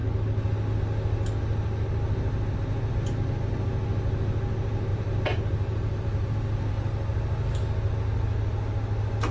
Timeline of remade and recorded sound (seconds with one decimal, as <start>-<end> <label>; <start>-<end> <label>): 0.0-4.9 recorded; 4.9-6.7 remade; 6.7-9.3 recorded